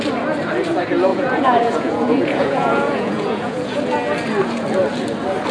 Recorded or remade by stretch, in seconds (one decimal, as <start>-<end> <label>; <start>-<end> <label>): 0.0-1.1 recorded; 1.1-3.8 remade; 3.8-5.5 recorded

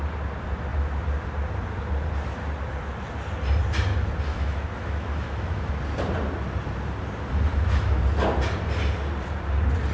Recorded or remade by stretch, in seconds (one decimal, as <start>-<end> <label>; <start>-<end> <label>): 0.0-4.3 recorded; 4.3-5.7 remade; 5.7-7.5 recorded; 7.5-8.0 remade; 8.0-9.9 recorded

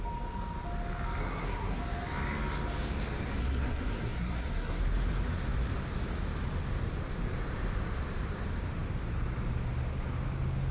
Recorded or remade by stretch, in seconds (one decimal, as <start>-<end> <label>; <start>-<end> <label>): 0.0-1.2 recorded; 1.2-1.8 remade; 1.8-3.4 recorded; 3.4-4.8 remade; 4.8-10.7 recorded

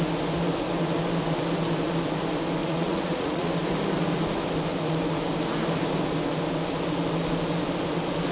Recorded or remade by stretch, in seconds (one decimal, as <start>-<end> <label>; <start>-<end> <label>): 0.0-2.6 recorded; 2.6-3.5 remade; 3.5-8.3 recorded

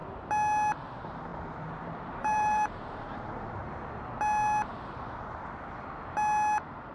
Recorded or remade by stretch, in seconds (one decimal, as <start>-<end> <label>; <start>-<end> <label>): 0.0-0.9 recorded; 0.9-3.6 remade; 3.6-6.9 recorded